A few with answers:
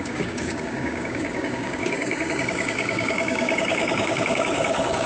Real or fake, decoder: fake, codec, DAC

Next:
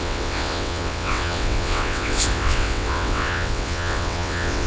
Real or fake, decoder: fake, vocoder, WaveNeXt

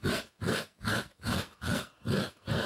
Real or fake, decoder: fake, codec, SNAC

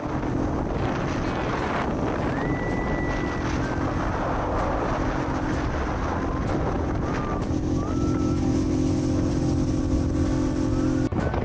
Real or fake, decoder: real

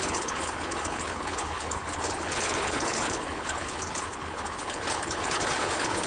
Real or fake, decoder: fake, codec, HILCodec